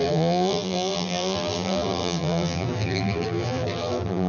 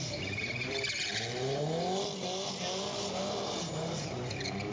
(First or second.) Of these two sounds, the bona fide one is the second